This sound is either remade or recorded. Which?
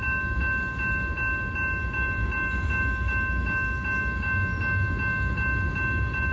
recorded